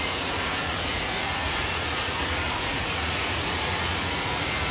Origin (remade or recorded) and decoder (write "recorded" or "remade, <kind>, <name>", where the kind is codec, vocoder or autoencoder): remade, vocoder, Vocos